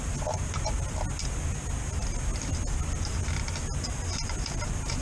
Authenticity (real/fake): real